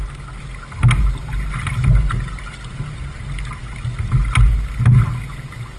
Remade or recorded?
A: recorded